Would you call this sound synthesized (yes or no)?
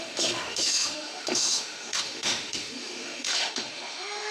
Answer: yes